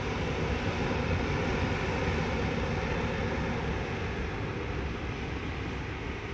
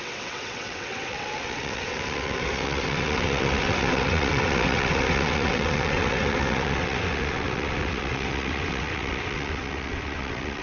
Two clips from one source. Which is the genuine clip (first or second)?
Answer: first